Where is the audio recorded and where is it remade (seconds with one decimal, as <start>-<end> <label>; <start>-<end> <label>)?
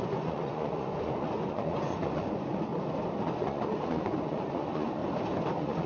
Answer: 0.0-2.7 remade; 2.7-3.2 recorded; 3.2-5.0 remade; 5.0-5.5 recorded; 5.5-5.9 remade